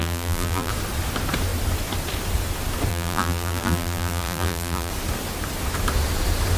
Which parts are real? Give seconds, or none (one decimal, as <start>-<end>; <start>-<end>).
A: 0.7-2.9; 4.9-6.6